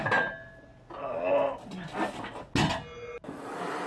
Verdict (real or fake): real